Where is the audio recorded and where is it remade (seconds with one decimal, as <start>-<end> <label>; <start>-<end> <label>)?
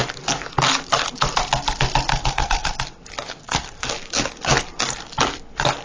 0.0-2.1 recorded; 2.1-2.8 remade; 2.8-3.4 recorded; 3.4-3.9 remade; 3.9-5.8 recorded